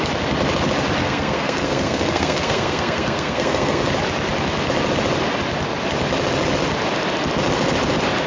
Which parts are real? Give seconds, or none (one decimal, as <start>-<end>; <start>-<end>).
0.0-1.0; 3.8-8.3